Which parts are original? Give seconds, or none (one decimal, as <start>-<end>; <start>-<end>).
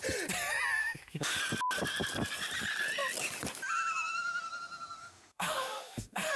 0.0-0.8; 1.4-5.0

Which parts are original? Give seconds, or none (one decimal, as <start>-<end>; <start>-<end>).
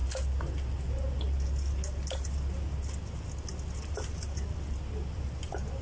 0.0-5.8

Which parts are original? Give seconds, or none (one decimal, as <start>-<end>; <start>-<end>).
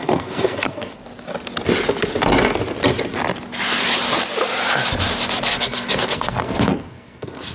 1.0-5.5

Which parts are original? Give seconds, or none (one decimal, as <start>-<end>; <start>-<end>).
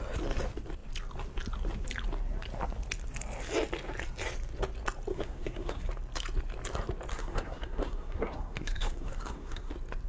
0.0-5.1; 5.9-7.1; 9.7-10.1